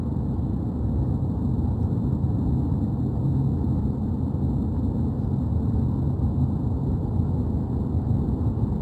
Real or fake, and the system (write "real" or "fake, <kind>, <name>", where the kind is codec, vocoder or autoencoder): real